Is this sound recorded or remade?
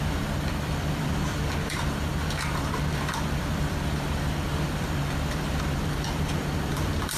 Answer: remade